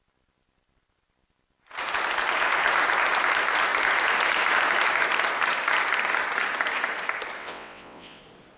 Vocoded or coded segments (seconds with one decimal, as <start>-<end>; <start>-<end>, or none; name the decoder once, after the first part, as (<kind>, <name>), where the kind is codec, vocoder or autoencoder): 7.4-8.2 (vocoder, WaveNeXt)